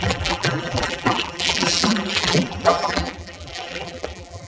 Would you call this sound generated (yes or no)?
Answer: yes